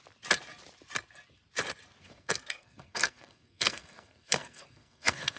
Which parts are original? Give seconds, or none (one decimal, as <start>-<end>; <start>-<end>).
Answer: 0.0-2.0